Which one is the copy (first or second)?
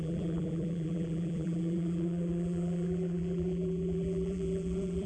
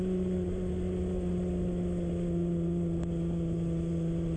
first